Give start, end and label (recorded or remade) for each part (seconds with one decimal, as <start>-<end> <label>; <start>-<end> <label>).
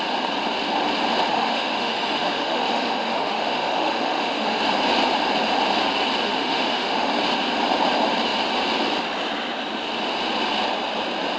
0.0-1.3 recorded; 1.3-4.6 remade; 4.6-6.2 recorded; 6.2-7.1 remade; 7.1-11.4 recorded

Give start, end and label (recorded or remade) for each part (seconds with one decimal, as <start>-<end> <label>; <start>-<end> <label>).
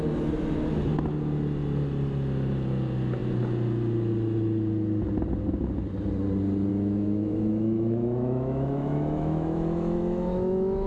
0.0-6.7 recorded; 6.7-10.9 remade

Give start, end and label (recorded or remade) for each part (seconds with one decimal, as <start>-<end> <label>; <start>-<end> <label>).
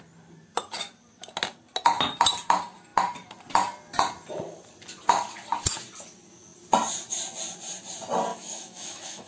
0.0-8.3 recorded; 8.3-9.3 remade